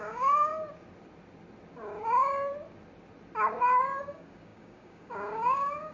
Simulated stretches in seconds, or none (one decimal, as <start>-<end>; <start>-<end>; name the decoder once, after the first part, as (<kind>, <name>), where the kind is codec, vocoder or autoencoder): 0.0-0.5 (codec, DAC); 4.0-5.9